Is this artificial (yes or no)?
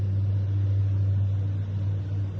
no